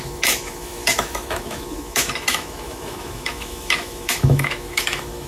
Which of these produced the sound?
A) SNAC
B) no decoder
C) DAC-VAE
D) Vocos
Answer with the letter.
C